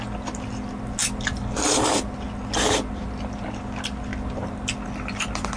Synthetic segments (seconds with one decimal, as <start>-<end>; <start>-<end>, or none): none